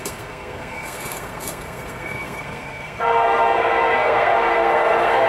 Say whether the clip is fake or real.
fake